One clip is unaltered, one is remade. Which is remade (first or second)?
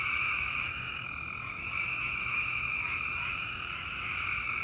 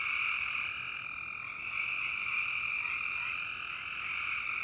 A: first